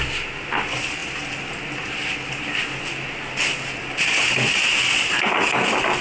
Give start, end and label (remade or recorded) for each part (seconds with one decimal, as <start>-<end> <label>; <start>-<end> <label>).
0.0-6.0 recorded